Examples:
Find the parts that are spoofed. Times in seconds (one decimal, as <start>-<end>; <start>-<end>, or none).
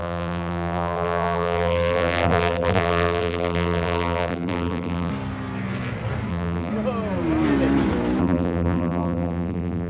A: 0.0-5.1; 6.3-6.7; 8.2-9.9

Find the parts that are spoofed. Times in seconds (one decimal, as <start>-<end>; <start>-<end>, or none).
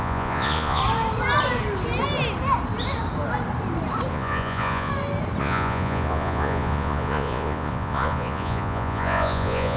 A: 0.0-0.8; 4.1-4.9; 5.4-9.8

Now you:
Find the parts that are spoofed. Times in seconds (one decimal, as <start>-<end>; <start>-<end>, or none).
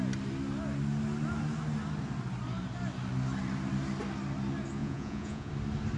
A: 4.8-5.5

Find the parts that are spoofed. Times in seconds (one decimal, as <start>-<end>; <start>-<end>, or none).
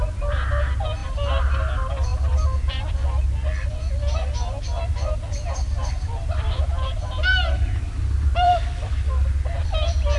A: 5.8-8.8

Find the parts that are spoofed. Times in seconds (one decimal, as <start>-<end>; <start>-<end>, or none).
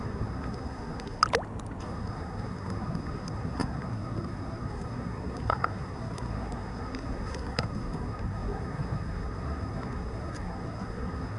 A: 0.0-1.2; 1.8-11.4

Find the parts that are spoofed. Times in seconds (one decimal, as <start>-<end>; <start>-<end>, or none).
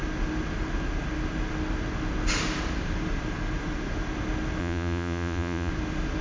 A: 4.6-5.7